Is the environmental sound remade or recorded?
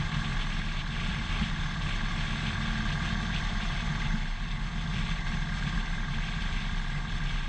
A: recorded